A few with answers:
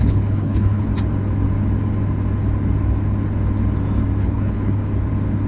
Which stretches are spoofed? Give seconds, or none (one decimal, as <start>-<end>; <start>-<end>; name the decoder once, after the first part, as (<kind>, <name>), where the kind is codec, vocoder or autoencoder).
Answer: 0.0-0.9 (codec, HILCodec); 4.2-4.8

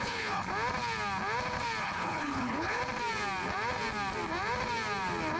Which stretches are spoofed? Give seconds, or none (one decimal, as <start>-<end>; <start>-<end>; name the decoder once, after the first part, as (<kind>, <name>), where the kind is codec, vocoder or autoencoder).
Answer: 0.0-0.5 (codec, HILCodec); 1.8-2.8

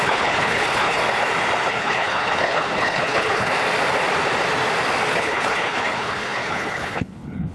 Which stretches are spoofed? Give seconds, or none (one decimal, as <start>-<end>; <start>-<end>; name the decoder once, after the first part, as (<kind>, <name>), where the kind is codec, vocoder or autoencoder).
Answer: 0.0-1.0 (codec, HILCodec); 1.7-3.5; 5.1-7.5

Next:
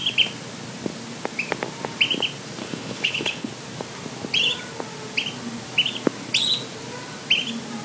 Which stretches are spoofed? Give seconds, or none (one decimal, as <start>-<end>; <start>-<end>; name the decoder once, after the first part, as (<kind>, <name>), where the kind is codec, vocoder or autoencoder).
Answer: 2.6-3.5 (codec, HILCodec)

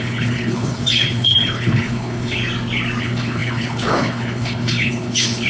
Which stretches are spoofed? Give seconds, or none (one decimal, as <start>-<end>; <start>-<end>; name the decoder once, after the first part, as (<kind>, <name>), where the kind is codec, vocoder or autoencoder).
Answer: 0.0-2.4 (codec, HILCodec); 3.0-5.5

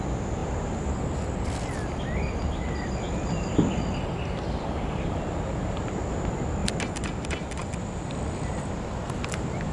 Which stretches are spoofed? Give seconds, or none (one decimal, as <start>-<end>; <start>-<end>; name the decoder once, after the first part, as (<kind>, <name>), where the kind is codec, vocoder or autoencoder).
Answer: none

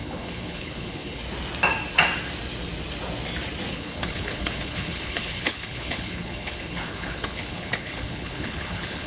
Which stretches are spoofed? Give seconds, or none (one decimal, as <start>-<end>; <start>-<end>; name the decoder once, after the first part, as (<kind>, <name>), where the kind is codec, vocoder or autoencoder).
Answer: 0.0-1.2 (codec, HILCodec); 3.7-9.1

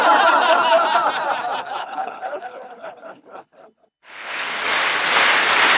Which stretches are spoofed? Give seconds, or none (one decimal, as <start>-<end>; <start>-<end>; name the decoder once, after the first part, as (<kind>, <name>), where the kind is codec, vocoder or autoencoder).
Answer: 1.8-4.6 (codec, HILCodec)